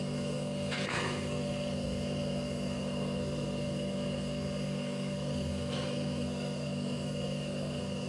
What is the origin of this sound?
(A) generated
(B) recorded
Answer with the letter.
A